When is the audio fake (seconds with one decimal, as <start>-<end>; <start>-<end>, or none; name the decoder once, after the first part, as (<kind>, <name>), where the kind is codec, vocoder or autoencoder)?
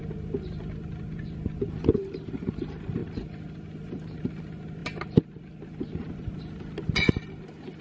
1.9-2.5 (vocoder, BigVGAN v2)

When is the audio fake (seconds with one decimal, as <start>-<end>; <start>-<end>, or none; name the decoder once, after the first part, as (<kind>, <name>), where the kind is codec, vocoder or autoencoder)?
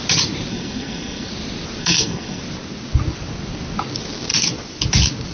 0.5-1.3 (codec, SNAC); 1.8-2.4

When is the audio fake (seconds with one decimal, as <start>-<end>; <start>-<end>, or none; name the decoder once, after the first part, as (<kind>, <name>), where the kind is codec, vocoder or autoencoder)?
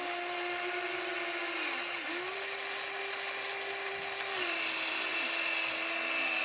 none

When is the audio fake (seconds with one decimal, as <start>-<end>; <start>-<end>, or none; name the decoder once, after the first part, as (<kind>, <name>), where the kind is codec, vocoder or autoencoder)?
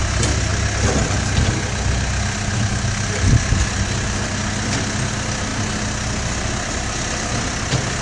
none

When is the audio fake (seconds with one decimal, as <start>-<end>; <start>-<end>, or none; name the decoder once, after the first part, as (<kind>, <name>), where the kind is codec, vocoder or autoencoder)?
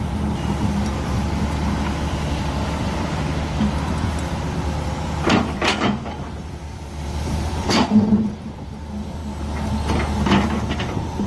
0.0-5.6 (vocoder, BigVGAN v2); 6.5-9.2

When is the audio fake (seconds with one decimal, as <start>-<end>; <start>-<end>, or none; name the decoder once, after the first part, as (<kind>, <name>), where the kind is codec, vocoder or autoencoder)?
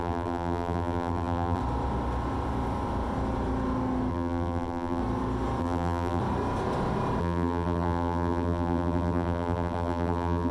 0.0-1.6 (vocoder, BigVGAN v2); 4.1-5.0; 5.6-6.2; 7.2-10.5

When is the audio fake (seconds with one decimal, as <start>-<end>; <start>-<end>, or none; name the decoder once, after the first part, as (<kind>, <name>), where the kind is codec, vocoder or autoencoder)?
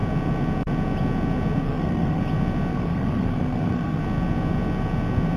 1.6-2.2 (codec, SNAC); 2.7-4.0